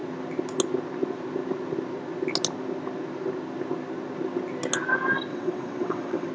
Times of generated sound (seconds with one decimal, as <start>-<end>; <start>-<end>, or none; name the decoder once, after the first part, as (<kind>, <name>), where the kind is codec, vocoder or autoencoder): 5.3-6.3 (vocoder, WaveNeXt)